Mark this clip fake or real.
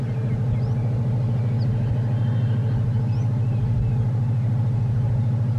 real